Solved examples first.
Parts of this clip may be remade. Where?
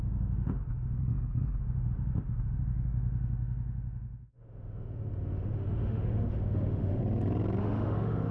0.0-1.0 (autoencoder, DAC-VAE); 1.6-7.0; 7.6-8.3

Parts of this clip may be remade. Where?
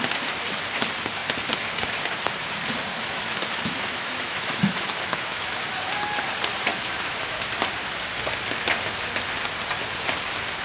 2.9-5.9 (autoencoder, DAC-VAE); 6.7-7.5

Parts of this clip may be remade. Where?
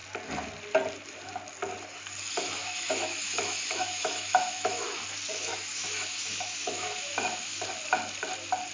2.6-5.0 (autoencoder, DAC-VAE); 5.5-7.7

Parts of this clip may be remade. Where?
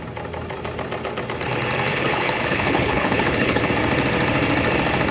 1.9-3.7 (codec, HILCodec)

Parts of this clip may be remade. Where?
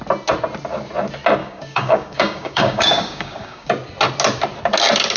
1.4-3.7 (codec, DAC)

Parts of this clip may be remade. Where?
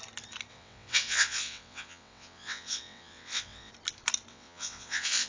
0.5-3.7 (vocoder, WaveNeXt); 4.3-5.3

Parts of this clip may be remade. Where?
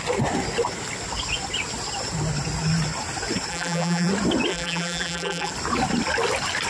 3.5-4.1 (vocoder, BigVGAN v2); 4.5-5.5